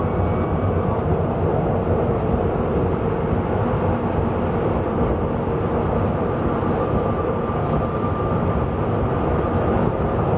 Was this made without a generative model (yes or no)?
yes